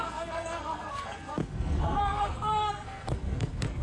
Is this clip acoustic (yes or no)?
no